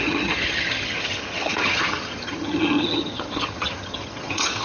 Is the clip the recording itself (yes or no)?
no